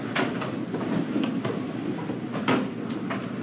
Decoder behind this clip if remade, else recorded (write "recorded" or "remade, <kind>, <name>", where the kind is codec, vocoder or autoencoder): recorded